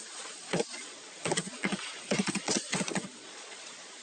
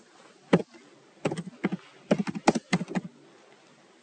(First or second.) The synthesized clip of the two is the first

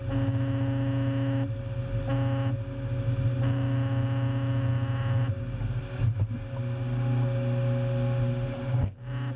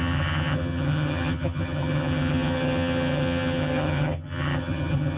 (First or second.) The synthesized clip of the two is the second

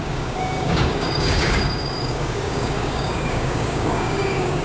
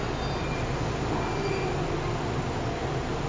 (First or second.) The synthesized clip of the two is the first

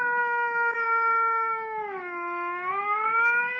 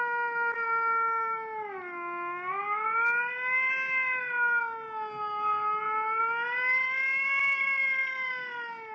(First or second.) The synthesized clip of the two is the first